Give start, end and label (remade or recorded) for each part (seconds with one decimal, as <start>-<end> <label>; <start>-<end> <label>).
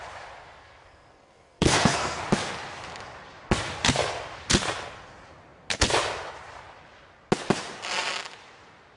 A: 0.0-0.6 recorded; 0.6-2.2 remade; 2.2-9.0 recorded